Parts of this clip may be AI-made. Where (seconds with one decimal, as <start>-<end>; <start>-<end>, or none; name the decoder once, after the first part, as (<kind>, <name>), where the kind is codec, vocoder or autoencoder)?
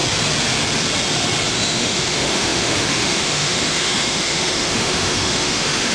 1.5-5.9 (autoencoder, DAC-VAE)